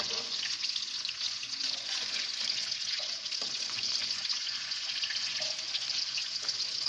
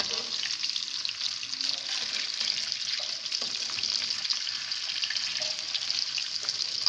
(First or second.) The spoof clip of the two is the first